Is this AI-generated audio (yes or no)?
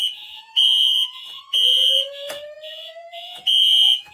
yes